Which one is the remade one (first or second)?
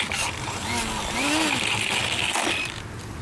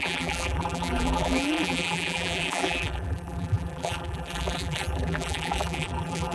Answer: second